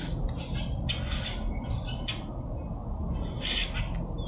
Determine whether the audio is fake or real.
real